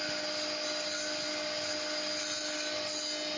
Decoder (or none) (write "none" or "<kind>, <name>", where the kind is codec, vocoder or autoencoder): none